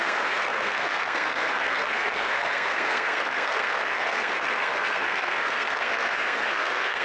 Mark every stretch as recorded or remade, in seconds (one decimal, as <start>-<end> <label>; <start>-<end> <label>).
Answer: 0.0-7.0 remade